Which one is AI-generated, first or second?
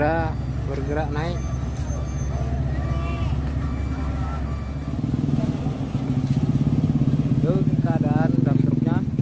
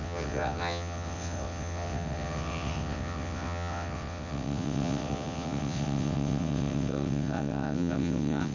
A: second